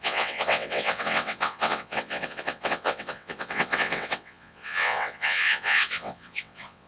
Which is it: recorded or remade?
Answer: remade